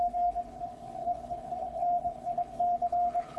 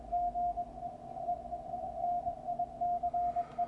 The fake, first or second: first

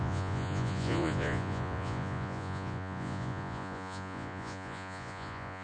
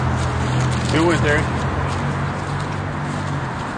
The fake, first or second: first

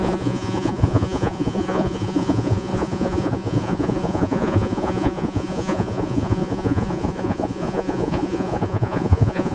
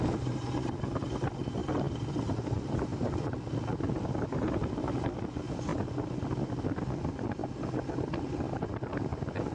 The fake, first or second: first